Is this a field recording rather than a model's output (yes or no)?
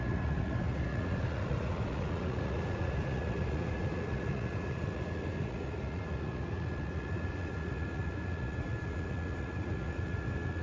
no